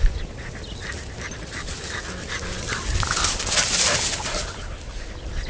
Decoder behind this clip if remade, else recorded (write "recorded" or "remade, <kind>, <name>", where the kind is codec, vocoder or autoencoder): recorded